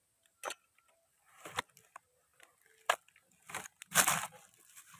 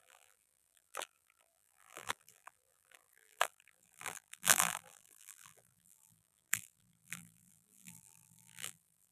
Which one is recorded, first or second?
first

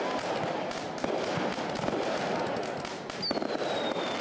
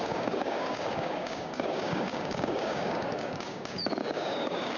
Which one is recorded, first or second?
first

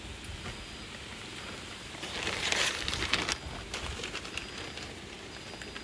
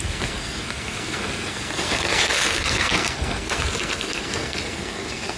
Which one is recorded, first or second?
first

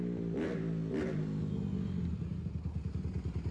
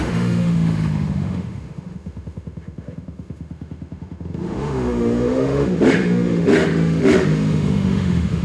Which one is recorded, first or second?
first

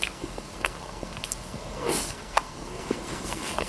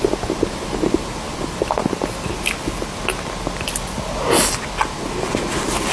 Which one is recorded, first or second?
second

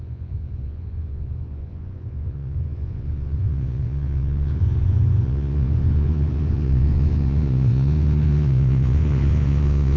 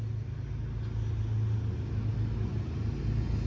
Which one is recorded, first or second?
second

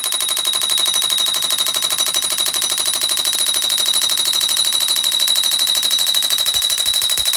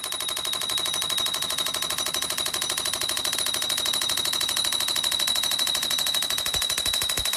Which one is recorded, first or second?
first